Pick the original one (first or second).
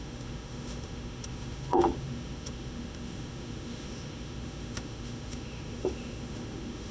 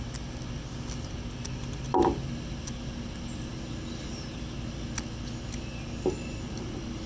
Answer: second